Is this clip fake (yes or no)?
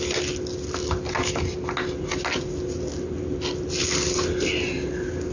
no